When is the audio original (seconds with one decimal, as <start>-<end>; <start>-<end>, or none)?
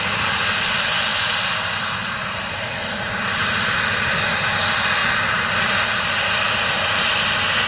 0.0-1.1; 2.6-7.7